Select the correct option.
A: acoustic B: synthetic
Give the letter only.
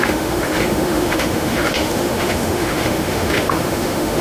B